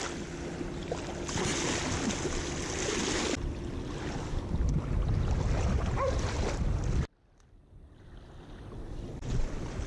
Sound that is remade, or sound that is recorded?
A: recorded